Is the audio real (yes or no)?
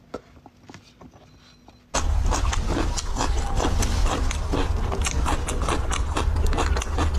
yes